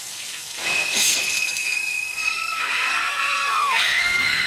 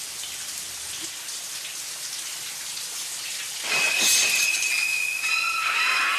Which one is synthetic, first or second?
first